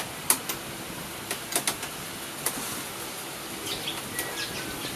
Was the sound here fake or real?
real